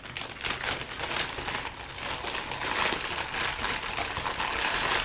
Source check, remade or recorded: recorded